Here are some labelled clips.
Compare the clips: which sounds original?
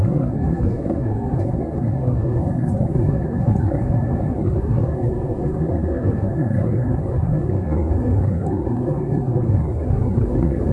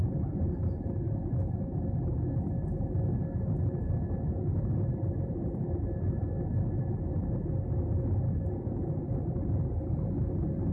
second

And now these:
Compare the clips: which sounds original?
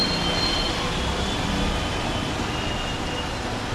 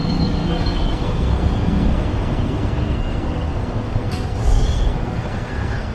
first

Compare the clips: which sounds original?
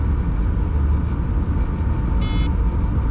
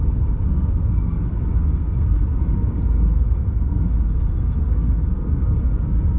first